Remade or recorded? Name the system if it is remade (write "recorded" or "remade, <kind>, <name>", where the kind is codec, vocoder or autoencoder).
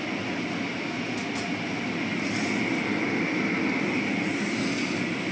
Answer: recorded